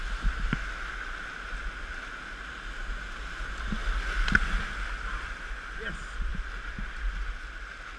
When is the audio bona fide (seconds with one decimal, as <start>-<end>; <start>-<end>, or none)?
0.0-8.0